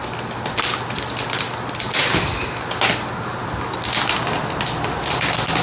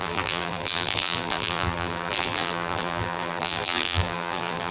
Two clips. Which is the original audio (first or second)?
first